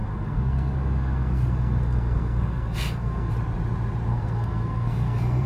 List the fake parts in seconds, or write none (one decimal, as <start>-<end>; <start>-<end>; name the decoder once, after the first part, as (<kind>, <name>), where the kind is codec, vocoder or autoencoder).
0.0-3.3 (codec, SNAC); 4.1-5.5